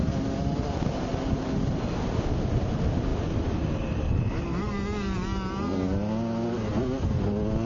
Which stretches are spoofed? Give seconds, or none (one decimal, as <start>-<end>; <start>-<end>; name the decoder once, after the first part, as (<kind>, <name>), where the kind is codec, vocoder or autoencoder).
3.1-4.4 (vocoder, BigVGAN v2)